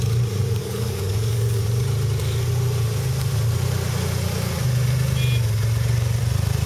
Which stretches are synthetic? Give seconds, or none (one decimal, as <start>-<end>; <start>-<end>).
0.6-1.6

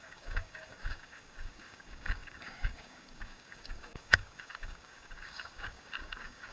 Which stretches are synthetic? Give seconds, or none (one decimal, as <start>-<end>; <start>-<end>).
0.0-6.5